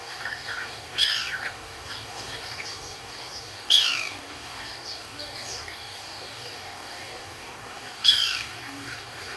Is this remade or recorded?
remade